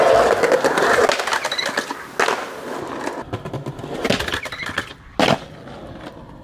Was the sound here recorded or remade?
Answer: recorded